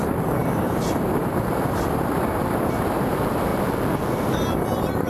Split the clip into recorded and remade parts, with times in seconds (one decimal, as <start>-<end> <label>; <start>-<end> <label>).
0.0-3.5 remade; 3.5-4.1 recorded; 4.1-5.1 remade